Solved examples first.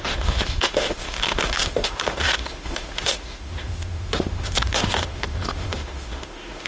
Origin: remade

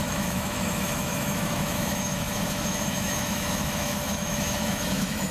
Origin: remade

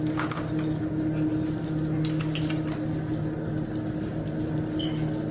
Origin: recorded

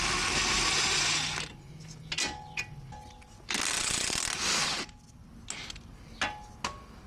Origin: recorded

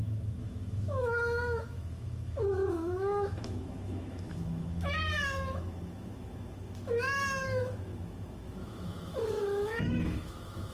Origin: remade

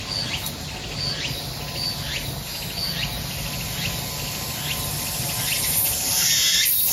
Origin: recorded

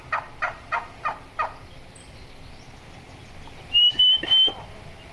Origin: recorded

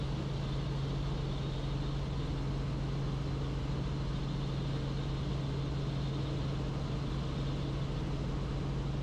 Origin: recorded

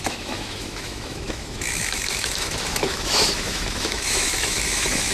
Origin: remade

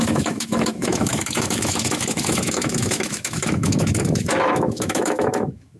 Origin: remade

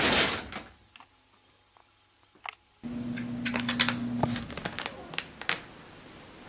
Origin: recorded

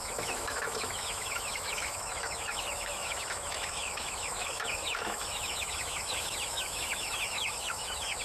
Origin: remade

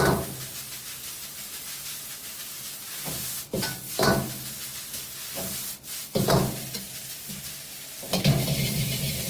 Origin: recorded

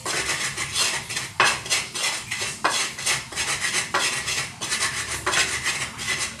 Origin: recorded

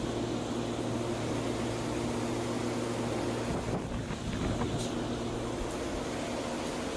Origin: recorded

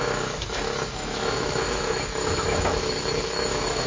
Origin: remade